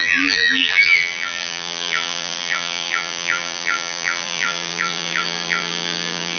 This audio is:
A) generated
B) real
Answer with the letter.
A